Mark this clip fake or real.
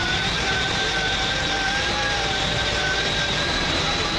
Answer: fake